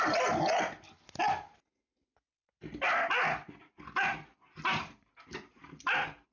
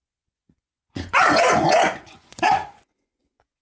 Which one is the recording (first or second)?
first